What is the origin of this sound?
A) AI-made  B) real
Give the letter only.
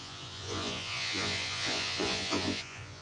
A